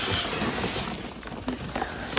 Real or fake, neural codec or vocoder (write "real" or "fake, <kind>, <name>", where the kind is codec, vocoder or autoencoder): real